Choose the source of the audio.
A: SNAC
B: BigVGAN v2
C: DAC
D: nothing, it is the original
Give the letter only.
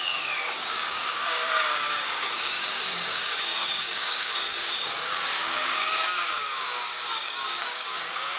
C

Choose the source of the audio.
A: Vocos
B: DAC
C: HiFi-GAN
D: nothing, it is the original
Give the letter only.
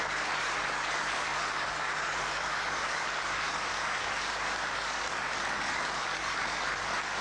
B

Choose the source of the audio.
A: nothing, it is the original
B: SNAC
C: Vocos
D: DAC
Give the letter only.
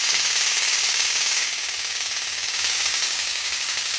D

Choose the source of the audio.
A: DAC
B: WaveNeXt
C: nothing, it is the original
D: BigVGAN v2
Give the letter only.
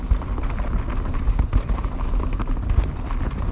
C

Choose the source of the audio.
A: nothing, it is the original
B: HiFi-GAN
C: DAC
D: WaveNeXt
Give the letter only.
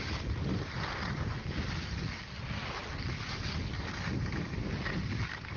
A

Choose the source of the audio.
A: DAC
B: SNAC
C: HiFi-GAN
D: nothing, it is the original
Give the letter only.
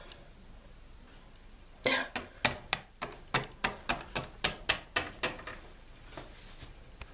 D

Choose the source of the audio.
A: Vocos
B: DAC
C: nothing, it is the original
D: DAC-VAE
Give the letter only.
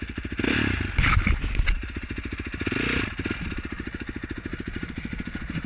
C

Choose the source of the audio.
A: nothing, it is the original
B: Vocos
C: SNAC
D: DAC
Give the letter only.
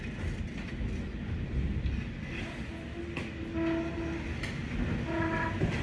A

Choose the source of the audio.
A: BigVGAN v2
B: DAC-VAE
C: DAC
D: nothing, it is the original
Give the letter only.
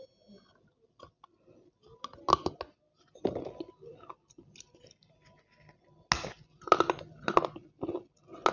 D